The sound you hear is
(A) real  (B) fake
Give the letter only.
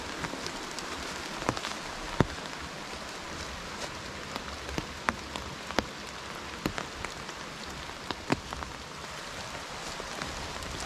A